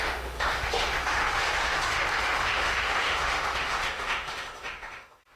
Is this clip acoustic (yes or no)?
no